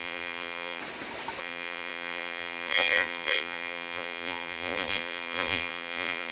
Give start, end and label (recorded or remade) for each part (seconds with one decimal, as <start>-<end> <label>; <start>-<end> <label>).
0.0-0.8 remade; 0.8-1.4 recorded; 1.4-6.3 remade